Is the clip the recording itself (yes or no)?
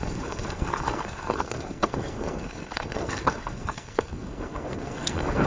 no